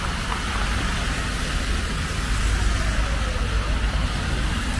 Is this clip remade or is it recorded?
recorded